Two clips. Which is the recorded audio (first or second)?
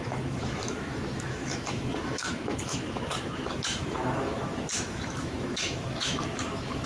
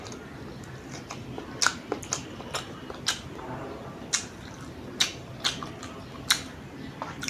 second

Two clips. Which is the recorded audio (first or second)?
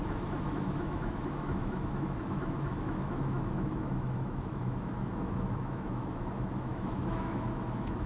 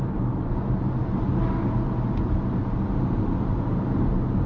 second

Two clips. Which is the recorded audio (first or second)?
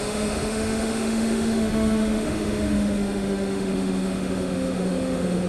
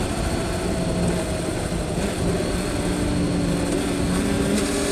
second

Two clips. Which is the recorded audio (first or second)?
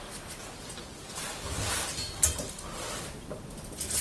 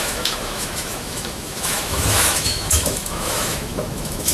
first